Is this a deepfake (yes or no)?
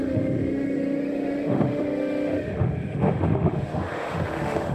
yes